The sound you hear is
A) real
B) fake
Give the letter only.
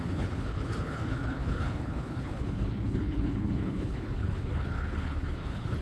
B